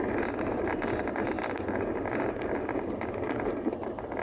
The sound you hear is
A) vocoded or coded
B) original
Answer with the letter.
B